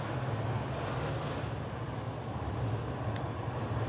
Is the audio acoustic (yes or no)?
yes